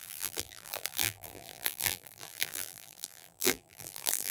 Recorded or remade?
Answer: remade